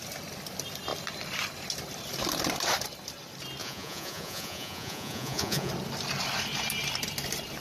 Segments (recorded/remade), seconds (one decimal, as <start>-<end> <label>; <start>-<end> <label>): 0.0-3.6 recorded; 3.6-5.7 remade; 5.7-7.6 recorded